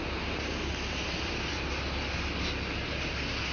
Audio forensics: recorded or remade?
recorded